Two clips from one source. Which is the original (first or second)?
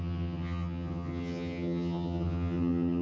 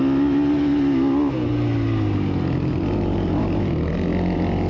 second